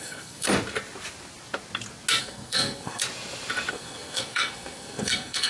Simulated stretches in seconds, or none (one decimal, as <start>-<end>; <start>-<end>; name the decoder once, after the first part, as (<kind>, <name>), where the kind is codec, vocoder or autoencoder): 0.0-0.5 (codec, SNAC); 2.2-3.0; 3.7-5.5